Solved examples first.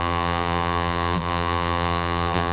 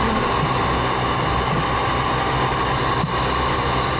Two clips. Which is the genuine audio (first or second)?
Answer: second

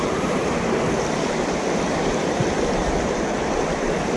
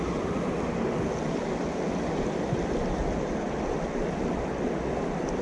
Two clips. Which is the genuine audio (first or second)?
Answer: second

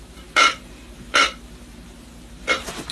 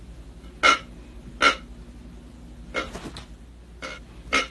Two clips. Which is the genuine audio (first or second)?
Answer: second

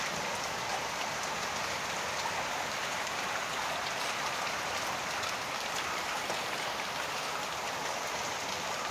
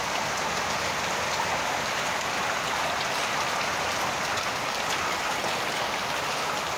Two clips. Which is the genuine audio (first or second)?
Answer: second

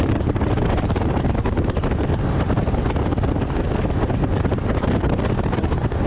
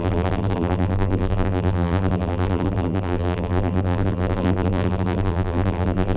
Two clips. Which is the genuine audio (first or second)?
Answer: first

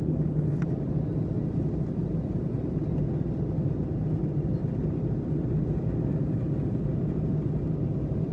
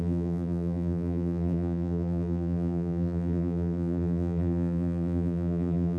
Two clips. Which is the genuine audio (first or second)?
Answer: first